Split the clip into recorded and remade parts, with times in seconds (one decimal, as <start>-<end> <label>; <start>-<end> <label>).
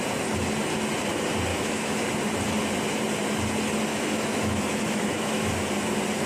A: 0.0-1.5 recorded; 1.5-2.1 remade; 2.1-3.9 recorded; 3.9-5.7 remade; 5.7-6.3 recorded